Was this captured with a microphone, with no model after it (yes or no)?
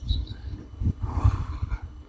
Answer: no